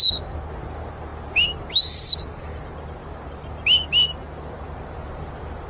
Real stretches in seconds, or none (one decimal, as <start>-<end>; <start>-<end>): 0.0-1.1; 2.4-5.7